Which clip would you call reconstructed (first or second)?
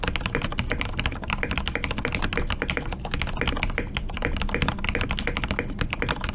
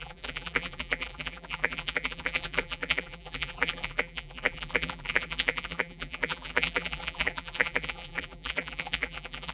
second